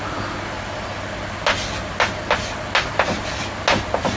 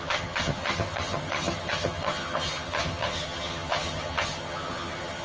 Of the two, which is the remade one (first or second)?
second